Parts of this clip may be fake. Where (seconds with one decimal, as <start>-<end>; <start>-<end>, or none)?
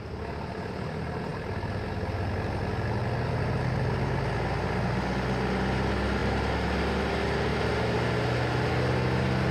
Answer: none